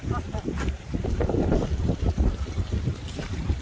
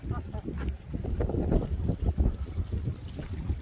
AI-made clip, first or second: first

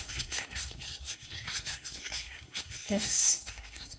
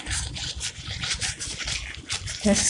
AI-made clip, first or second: first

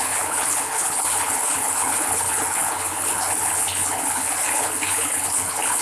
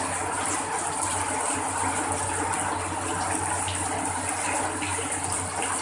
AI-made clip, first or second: first